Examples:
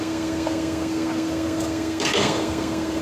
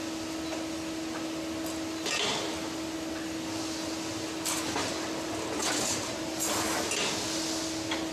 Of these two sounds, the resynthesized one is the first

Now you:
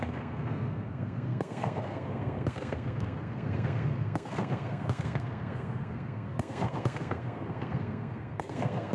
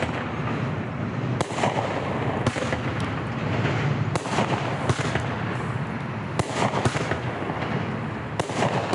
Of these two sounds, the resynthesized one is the first